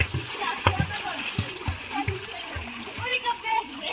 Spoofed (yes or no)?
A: yes